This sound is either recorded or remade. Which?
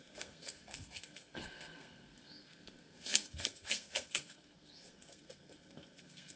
remade